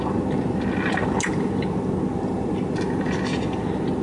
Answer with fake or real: real